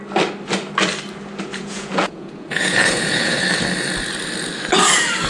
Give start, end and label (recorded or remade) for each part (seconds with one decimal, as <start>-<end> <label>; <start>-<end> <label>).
0.0-1.5 recorded; 1.5-3.4 remade; 3.4-5.3 recorded